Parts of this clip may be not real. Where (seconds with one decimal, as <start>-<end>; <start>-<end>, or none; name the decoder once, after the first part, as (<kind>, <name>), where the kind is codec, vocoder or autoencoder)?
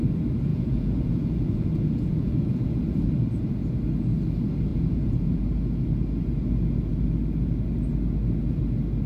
0.5-2.7 (vocoder, Vocos); 4.7-5.4